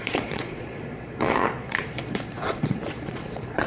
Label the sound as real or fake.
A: fake